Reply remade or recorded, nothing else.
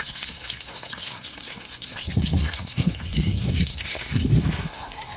remade